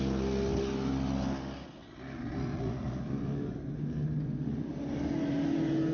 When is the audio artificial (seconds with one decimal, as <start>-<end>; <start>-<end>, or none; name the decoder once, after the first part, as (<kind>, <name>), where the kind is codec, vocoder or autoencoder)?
2.5-3.0 (vocoder, Vocos)